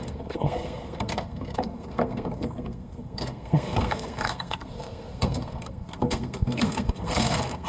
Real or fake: fake